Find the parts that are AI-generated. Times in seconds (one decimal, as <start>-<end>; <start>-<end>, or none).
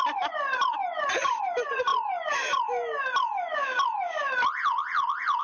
none